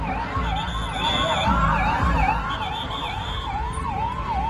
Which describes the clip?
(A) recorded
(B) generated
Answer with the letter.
A